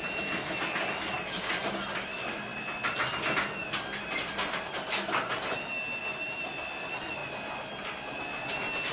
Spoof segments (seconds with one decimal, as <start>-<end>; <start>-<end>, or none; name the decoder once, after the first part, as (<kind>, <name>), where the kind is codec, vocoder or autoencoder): none